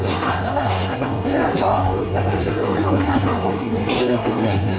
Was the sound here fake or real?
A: fake